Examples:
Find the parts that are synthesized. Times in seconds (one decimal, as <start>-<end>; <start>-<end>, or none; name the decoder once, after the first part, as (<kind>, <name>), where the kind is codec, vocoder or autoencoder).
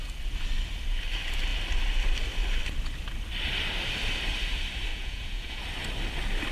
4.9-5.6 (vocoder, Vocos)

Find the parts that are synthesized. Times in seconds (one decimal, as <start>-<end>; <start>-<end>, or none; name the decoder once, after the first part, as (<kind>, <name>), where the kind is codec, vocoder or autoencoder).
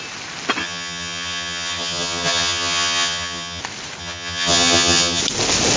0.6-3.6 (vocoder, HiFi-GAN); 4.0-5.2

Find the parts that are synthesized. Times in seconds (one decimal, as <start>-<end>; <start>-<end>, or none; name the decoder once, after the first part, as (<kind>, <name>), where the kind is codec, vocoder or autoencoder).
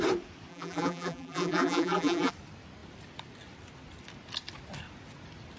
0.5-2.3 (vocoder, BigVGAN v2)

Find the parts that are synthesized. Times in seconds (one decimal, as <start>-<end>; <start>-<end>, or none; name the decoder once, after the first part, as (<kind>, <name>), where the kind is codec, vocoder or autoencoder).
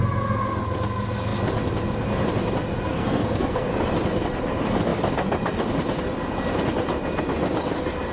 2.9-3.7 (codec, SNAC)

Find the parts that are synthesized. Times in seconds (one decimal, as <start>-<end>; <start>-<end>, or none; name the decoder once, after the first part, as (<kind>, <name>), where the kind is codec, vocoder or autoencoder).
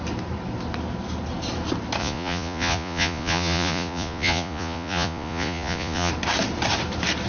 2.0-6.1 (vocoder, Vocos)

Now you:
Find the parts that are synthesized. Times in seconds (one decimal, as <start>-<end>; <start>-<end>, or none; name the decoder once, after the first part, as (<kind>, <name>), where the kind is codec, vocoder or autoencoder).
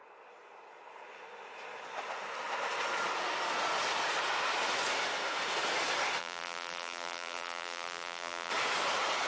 6.2-8.5 (vocoder, BigVGAN v2)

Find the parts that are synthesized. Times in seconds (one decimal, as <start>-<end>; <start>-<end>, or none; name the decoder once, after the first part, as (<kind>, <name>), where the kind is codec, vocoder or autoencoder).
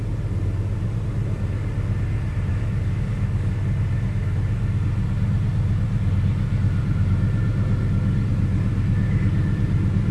2.5-3.6 (codec, DAC)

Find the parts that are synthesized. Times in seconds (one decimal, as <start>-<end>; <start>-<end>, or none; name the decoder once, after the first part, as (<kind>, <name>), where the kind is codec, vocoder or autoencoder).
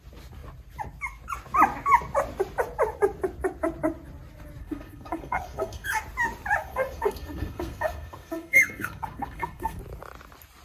4.6-6.0 (codec, SNAC); 6.6-9.8